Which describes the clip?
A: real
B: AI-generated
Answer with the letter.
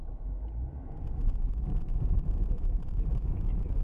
B